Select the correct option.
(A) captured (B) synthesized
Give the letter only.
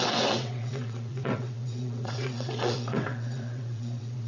B